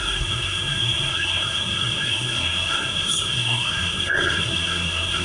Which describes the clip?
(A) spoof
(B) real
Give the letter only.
A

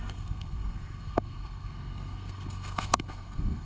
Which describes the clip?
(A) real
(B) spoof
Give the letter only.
B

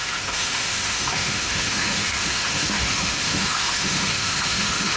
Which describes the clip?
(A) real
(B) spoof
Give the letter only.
B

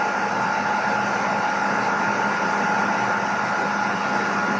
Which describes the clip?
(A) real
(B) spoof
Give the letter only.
A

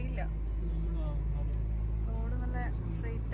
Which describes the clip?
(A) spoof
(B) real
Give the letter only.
B